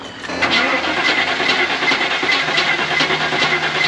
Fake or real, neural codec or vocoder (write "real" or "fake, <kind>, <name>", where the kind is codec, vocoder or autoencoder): real